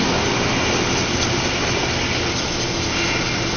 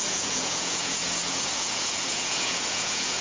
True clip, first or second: first